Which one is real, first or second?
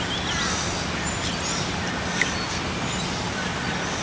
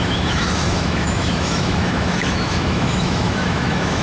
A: first